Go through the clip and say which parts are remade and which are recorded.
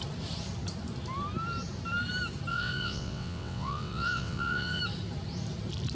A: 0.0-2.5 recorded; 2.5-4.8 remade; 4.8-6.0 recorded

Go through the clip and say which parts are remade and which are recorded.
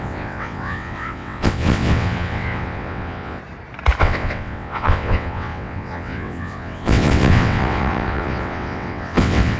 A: 0.0-3.4 remade; 3.4-4.0 recorded; 4.0-9.6 remade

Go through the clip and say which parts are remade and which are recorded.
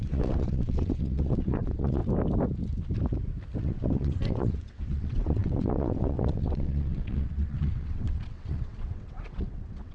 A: 0.0-2.0 remade; 2.0-3.6 recorded; 3.6-9.9 remade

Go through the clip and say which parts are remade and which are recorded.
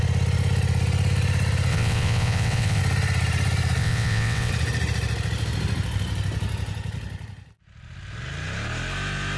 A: 0.0-1.7 recorded; 1.7-2.8 remade; 2.8-3.8 recorded; 3.8-4.5 remade; 4.5-9.4 recorded